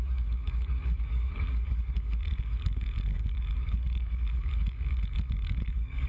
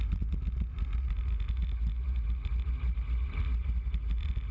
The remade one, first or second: first